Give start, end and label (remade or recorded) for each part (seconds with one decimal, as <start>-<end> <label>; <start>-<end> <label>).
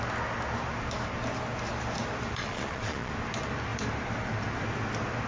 0.0-2.4 recorded; 2.4-3.1 remade; 3.1-5.3 recorded